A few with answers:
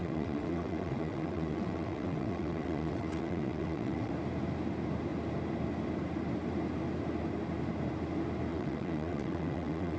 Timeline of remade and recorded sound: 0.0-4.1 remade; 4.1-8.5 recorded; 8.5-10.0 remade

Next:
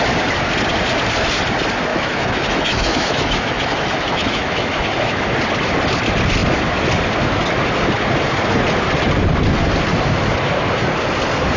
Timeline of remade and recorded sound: 0.0-1.9 recorded; 1.9-5.2 remade; 5.2-11.6 recorded

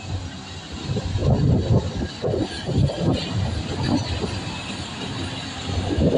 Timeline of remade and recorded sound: 0.0-6.2 recorded

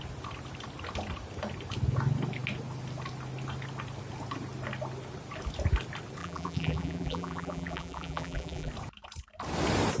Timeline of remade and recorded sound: 0.0-6.2 recorded; 6.2-8.7 remade; 8.7-10.0 recorded

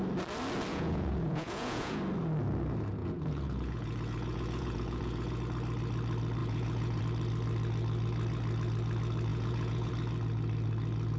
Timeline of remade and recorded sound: 0.0-0.7 recorded; 0.7-2.0 remade; 2.0-3.0 recorded; 3.0-5.4 remade; 5.4-6.4 recorded; 6.4-7.0 remade; 7.0-9.3 recorded; 9.3-9.9 remade; 9.9-11.2 recorded

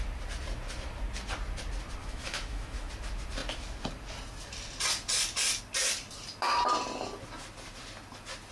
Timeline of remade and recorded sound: 0.0-2.0 recorded; 2.0-2.9 remade; 2.9-8.5 recorded

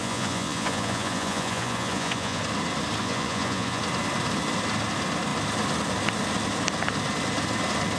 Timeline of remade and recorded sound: 0.0-2.4 remade; 2.4-3.0 recorded; 3.0-3.8 remade; 3.8-8.0 recorded